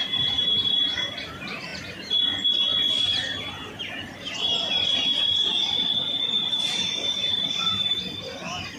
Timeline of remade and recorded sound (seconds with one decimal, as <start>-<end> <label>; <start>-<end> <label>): 0.0-1.7 remade; 1.7-3.8 recorded; 3.8-8.8 remade